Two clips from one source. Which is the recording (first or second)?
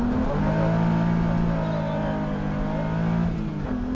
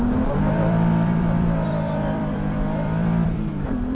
first